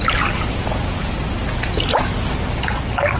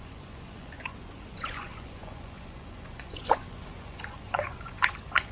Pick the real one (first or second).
first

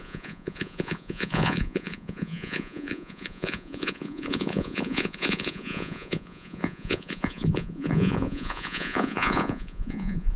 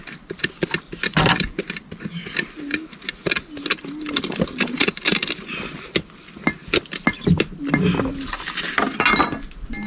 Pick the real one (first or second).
second